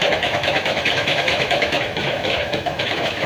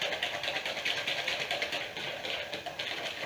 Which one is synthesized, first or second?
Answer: first